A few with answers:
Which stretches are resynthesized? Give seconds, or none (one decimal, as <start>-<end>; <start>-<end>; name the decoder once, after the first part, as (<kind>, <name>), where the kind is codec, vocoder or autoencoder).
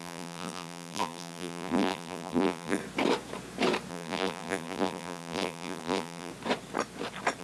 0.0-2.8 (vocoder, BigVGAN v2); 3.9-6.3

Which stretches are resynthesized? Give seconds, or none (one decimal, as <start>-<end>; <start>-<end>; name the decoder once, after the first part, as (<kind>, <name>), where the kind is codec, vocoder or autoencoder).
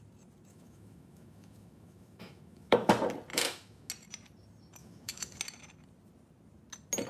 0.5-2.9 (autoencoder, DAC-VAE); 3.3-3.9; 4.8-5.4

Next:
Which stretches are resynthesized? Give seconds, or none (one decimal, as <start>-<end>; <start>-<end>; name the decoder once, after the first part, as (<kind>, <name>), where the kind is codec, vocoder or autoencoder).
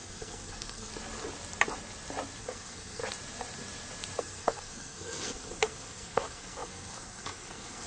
0.0-0.9 (codec, SNAC); 2.4-3.0; 4.2-7.9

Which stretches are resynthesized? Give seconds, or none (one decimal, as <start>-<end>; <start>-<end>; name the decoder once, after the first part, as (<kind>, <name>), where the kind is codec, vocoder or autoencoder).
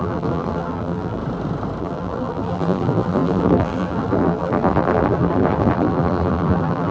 0.0-1.2 (vocoder, BigVGAN v2); 1.8-6.9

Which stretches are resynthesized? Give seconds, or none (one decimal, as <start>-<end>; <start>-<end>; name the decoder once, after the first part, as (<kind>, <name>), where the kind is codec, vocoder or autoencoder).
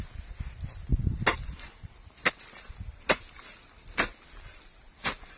none